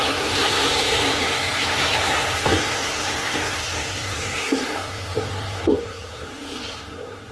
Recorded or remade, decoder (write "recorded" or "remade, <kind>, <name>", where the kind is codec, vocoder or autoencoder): remade, codec, SNAC